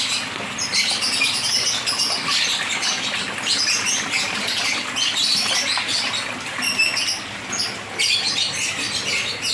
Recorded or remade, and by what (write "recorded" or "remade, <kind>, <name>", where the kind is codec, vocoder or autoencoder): recorded